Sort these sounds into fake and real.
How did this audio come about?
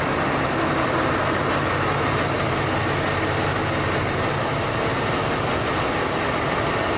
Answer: real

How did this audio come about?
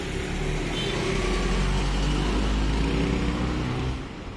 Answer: real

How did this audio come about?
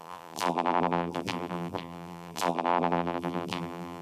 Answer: fake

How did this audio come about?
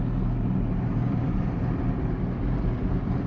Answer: fake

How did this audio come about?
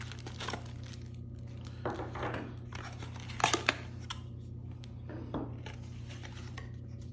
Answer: real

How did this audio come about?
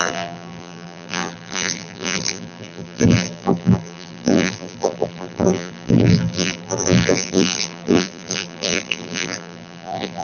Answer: fake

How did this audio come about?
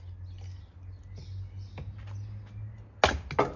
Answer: real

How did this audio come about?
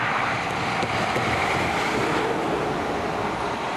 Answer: real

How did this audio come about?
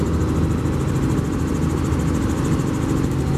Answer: real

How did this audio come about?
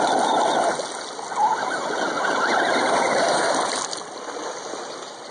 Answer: real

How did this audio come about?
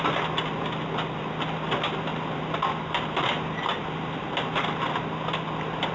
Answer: real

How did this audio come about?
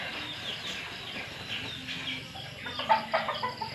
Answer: real